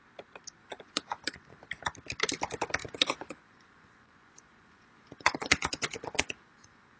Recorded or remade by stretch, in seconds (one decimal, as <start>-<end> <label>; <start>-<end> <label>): 0.0-0.6 recorded; 0.6-1.6 remade; 1.6-2.8 recorded; 2.8-7.0 remade

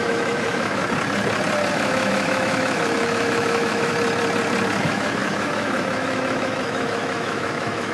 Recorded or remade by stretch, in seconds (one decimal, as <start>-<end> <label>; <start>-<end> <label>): 0.0-0.8 remade; 0.8-1.7 recorded; 1.7-3.9 remade; 3.9-4.8 recorded; 4.8-7.9 remade